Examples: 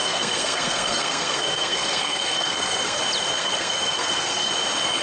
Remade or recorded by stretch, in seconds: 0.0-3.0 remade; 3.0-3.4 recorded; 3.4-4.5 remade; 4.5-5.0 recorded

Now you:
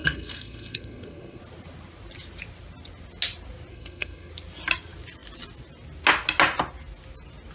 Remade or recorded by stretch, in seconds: 0.0-1.4 remade; 1.4-3.7 recorded; 3.7-4.3 remade; 4.3-7.5 recorded